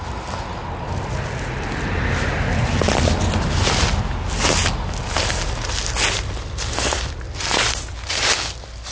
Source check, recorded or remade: recorded